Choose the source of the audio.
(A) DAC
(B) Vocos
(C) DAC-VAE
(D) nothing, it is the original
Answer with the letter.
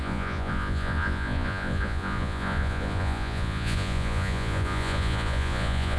B